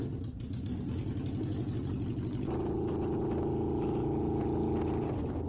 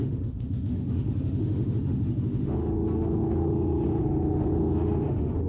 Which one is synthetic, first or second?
second